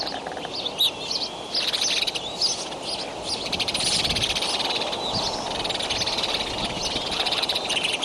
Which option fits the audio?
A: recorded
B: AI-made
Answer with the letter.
A